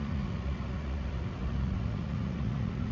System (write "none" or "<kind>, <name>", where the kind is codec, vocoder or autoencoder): vocoder, Vocos